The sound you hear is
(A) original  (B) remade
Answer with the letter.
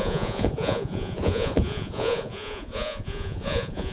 B